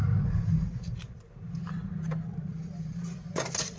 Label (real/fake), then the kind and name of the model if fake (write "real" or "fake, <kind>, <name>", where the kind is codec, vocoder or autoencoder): real